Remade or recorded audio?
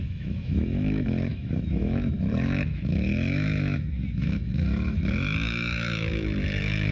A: remade